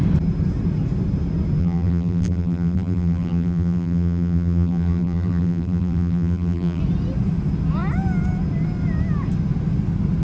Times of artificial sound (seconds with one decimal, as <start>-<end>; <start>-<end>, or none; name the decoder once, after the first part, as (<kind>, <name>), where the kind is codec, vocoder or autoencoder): 1.6-6.8 (vocoder, BigVGAN v2)